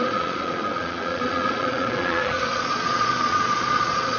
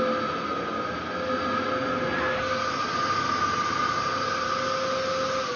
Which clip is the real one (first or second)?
second